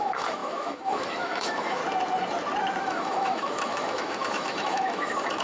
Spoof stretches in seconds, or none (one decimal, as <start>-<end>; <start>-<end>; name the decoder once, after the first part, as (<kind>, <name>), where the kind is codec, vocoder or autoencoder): 0.0-1.8 (autoencoder, DAC-VAE); 2.8-5.4